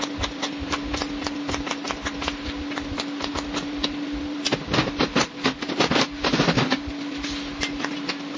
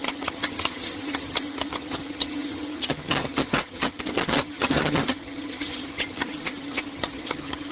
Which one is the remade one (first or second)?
second